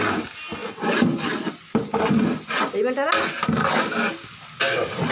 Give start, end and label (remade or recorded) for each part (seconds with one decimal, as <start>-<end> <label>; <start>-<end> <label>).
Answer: 0.0-5.1 recorded